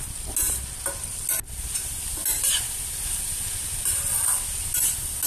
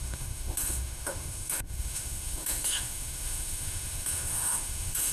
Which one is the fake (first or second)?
second